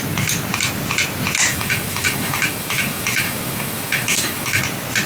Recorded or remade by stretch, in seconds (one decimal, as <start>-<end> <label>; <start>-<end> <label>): 0.0-1.5 recorded; 1.5-4.6 remade; 4.6-5.1 recorded